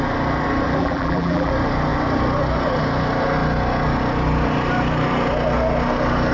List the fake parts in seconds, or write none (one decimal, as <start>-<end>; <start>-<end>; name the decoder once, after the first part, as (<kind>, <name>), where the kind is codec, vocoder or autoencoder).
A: 0.8-1.5 (vocoder, BigVGAN v2)